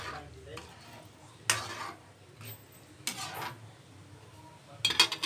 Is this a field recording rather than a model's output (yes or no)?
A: yes